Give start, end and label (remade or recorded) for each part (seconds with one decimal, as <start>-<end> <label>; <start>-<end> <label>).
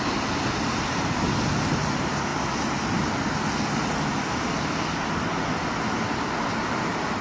0.0-7.2 recorded